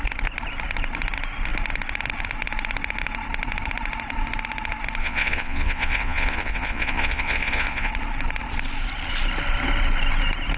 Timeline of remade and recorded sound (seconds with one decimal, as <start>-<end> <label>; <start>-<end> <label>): 0.0-5.0 recorded; 5.0-7.9 remade; 7.9-10.6 recorded